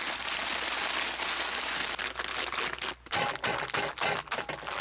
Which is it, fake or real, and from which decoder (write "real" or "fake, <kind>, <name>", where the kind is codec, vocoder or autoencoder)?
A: real